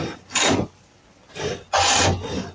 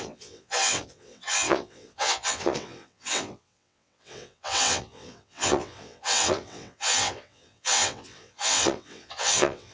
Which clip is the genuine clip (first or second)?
first